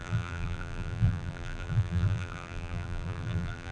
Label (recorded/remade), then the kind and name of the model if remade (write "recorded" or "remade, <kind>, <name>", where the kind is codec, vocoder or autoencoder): remade, vocoder, BigVGAN v2